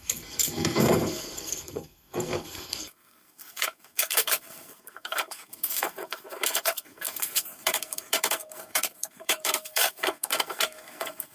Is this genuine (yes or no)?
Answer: no